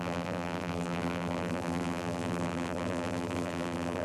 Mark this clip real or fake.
fake